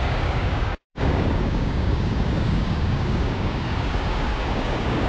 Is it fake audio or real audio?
fake